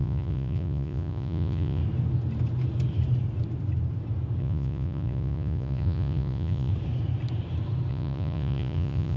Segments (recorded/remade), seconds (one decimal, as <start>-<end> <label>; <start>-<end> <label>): 0.0-1.8 remade; 1.8-4.4 recorded; 4.4-6.7 remade; 6.7-7.9 recorded; 7.9-9.2 remade